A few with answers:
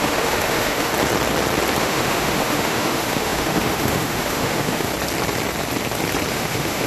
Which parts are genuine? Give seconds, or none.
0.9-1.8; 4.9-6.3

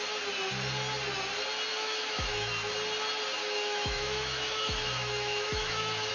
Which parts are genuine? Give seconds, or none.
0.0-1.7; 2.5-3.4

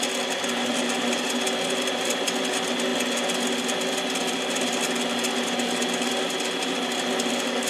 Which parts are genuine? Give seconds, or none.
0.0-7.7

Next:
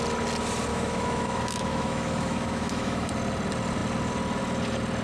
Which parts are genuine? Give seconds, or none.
0.0-0.7; 3.1-5.0